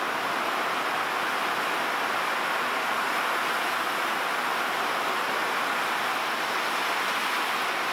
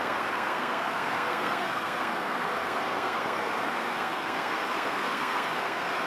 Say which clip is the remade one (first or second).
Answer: second